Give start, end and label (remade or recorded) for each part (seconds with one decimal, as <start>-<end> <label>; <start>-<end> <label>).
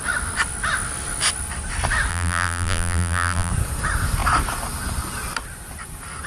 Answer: 0.0-2.1 recorded; 2.1-3.5 remade; 3.5-6.3 recorded